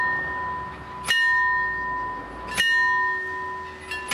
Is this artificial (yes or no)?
no